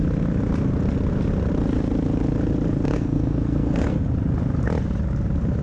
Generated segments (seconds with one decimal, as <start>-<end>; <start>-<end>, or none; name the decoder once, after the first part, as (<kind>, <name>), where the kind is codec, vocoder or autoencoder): 2.9-4.0 (codec, SNAC)

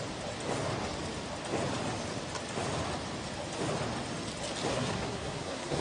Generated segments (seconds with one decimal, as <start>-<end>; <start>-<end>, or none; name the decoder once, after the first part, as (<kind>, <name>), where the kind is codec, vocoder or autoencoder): 4.7-5.8 (codec, SNAC)

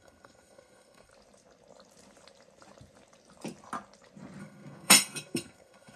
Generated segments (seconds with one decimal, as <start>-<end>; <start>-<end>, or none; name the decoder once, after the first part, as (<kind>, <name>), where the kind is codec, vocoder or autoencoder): 0.0-1.1 (codec, SNAC); 4.4-6.0